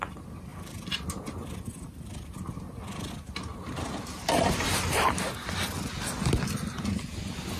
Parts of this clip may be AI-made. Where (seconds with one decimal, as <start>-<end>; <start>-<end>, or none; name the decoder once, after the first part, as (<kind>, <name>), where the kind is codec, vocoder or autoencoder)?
0.5-3.1 (vocoder, BigVGAN v2); 3.5-5.5